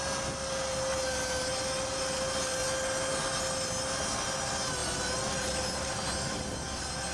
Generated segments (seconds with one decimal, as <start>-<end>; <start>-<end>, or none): none